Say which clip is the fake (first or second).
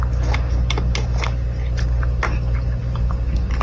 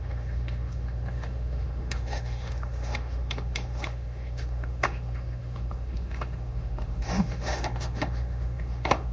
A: second